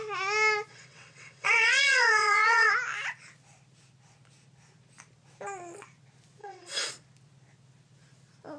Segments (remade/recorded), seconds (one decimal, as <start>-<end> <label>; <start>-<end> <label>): 0.0-0.7 recorded; 0.7-2.7 remade; 2.7-6.4 recorded; 6.4-6.9 remade; 6.9-8.6 recorded